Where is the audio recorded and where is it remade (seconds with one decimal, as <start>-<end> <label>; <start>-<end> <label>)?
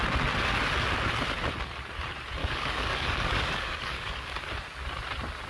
0.0-2.4 recorded; 2.4-4.4 remade; 4.4-5.5 recorded